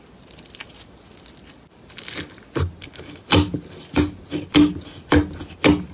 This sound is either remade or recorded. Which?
recorded